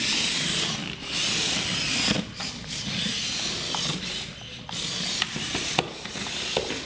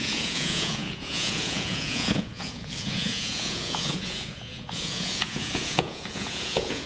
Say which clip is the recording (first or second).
first